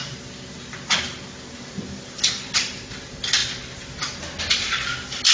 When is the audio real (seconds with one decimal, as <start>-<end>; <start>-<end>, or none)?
0.0-5.3